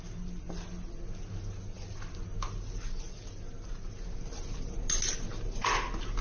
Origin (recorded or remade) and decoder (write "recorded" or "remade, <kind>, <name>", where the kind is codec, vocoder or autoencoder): recorded